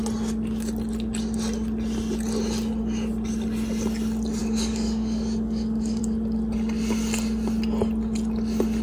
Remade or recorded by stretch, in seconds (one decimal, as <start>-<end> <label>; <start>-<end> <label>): 0.0-4.4 recorded; 4.4-6.0 remade; 6.0-8.8 recorded

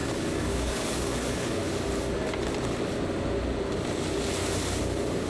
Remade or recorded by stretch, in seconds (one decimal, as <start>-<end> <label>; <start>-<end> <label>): 0.0-1.6 remade; 1.6-4.8 recorded; 4.8-5.3 remade

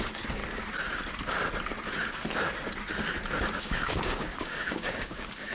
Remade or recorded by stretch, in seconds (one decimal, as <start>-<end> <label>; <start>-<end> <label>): 0.0-0.4 remade; 0.4-3.6 recorded; 3.6-5.5 remade

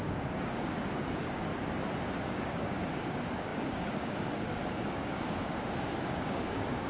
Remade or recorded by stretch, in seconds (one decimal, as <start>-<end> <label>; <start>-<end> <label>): 0.0-1.5 remade; 1.5-2.2 recorded; 2.2-6.9 remade